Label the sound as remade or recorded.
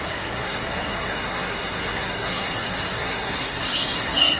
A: remade